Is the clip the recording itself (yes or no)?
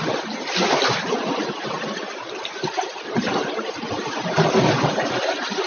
yes